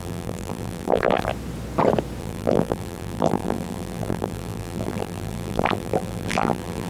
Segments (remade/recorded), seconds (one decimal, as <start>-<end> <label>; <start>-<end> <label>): 0.0-1.3 remade; 1.3-2.2 recorded; 2.2-6.9 remade